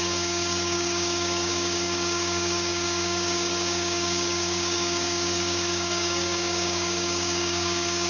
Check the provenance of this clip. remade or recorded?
remade